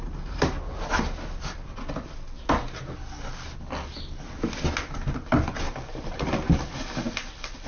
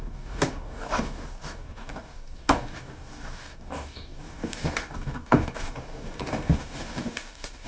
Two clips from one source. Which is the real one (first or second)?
first